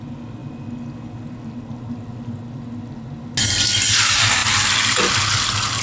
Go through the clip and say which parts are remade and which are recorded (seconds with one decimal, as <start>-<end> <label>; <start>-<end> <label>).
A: 0.0-5.8 recorded